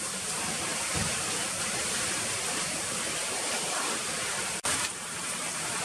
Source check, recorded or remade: remade